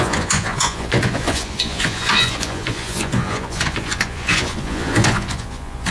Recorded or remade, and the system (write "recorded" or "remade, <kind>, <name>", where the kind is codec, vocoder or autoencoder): remade, vocoder, Vocos